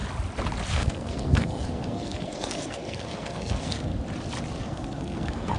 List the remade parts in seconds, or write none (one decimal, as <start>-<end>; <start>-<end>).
0.7-3.9; 4.6-5.6

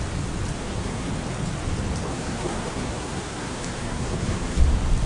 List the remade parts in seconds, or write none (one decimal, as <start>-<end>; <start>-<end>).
0.6-1.1; 2.1-4.6

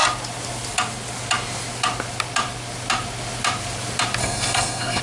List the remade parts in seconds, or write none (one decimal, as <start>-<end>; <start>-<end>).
4.2-5.0

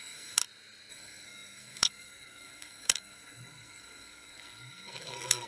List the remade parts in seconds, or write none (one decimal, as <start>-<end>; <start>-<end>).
0.0-0.4; 0.9-5.5

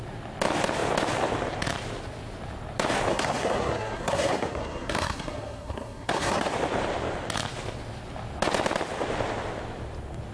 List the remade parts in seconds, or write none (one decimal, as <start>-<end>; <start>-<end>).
3.1-6.5